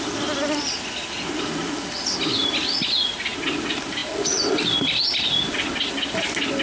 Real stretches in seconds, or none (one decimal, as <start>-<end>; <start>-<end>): 0.0-6.6